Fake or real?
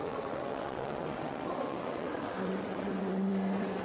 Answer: fake